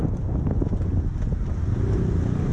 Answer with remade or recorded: recorded